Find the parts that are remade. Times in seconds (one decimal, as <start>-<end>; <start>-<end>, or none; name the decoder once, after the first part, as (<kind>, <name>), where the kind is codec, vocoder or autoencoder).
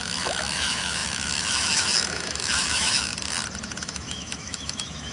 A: 0.0-3.1 (autoencoder, DAC-VAE); 3.8-5.1